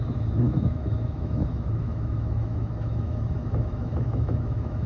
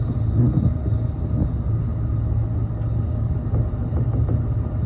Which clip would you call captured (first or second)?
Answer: second